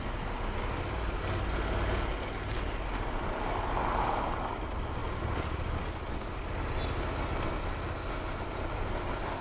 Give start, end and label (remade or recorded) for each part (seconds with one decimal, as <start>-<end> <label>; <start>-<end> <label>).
0.0-9.4 recorded